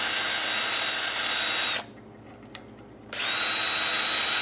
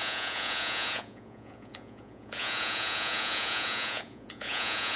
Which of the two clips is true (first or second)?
first